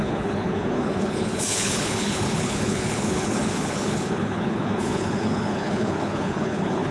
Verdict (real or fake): fake